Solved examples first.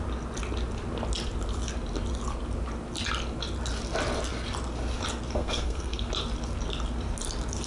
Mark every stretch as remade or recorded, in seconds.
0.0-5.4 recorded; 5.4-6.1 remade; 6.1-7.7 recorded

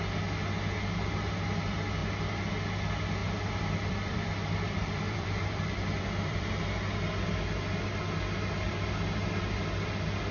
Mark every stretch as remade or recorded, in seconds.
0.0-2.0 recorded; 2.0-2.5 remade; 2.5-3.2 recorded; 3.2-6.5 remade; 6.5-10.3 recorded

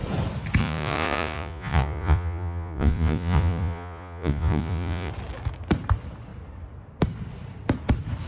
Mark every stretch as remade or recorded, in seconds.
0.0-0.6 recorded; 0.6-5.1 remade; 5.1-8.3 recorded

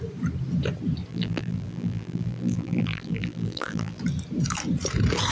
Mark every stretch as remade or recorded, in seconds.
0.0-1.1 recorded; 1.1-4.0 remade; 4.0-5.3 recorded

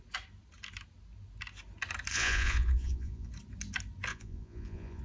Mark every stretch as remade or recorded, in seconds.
0.0-2.1 recorded; 2.1-3.3 remade; 3.3-4.1 recorded; 4.1-5.0 remade

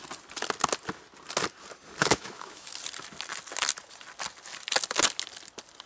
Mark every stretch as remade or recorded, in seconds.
0.0-2.0 recorded; 2.0-2.7 remade; 2.7-5.9 recorded